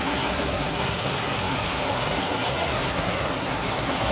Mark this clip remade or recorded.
remade